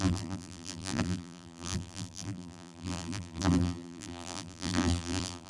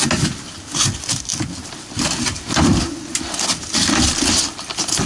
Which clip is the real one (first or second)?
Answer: second